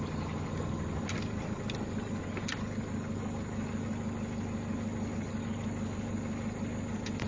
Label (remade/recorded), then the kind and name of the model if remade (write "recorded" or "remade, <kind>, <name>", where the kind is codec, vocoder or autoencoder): recorded